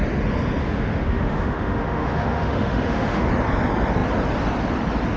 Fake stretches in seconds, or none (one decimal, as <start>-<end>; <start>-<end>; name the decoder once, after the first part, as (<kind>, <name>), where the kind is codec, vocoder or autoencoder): 0.6-3.3 (autoencoder, DAC-VAE)